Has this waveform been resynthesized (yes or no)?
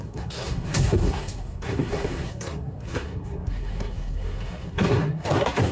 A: yes